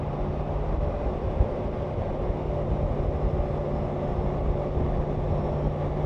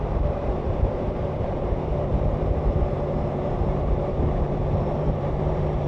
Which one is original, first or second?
first